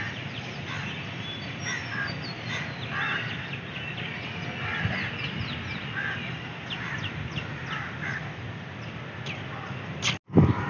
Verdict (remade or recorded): recorded